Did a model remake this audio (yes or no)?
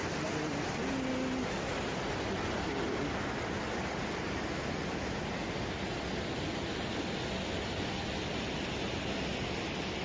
no